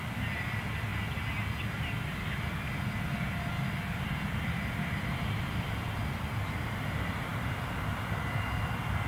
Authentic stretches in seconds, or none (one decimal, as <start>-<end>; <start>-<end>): 0.9-3.7